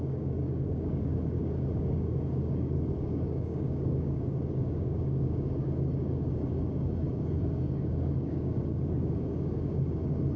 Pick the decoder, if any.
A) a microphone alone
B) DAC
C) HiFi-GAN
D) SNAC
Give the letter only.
B